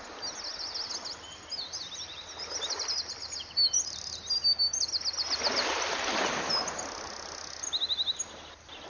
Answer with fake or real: real